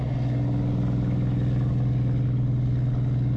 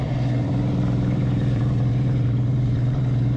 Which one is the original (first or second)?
first